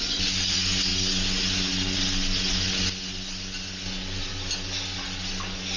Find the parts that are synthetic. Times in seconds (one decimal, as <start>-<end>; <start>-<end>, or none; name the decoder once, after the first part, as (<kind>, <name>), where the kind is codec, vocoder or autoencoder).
none